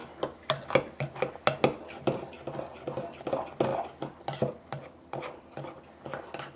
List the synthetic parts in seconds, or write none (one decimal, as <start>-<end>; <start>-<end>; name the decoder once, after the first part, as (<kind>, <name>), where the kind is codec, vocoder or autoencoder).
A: none